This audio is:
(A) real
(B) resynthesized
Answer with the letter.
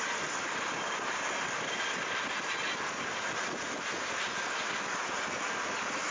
A